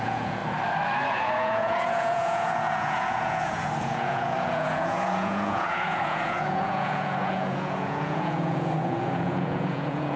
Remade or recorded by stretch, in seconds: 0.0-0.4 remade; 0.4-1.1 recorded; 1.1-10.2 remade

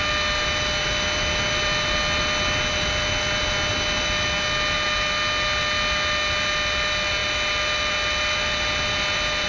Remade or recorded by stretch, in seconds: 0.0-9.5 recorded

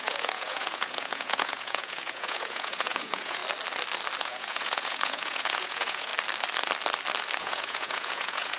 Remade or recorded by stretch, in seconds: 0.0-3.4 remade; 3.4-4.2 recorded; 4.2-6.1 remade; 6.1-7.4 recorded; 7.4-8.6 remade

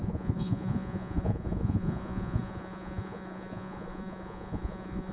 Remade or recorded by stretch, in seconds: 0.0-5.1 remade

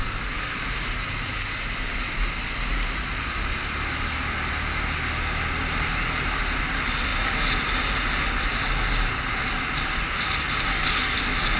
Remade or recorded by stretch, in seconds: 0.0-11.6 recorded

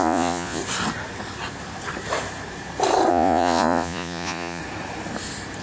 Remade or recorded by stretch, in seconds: 0.0-0.6 remade; 0.6-3.1 recorded; 3.1-4.6 remade; 4.6-5.6 recorded

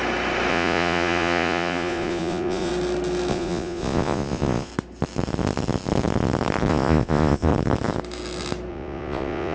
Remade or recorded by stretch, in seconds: 0.0-0.5 recorded; 0.5-2.7 remade; 2.7-3.3 recorded; 3.3-4.7 remade; 4.7-6.7 recorded; 6.7-7.5 remade; 7.5-8.7 recorded; 8.7-9.5 remade

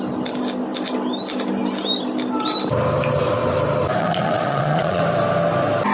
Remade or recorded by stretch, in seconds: 0.0-4.0 recorded; 4.0-5.0 remade; 5.0-5.9 recorded